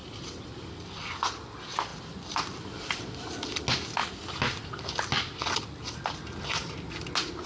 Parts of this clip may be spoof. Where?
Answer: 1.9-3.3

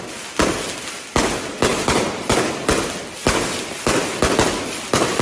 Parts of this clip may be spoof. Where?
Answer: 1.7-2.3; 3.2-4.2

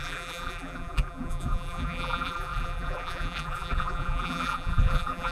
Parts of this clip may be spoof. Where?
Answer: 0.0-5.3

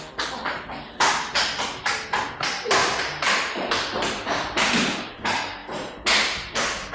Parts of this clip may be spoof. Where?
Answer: 2.8-4.7

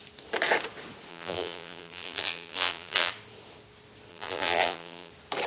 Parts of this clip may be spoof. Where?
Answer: 1.1-3.1; 4.1-5.1

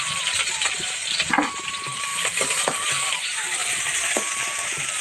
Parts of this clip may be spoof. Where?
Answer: 0.0-1.0; 1.7-5.0